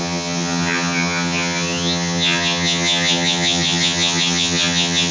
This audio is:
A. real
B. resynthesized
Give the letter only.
B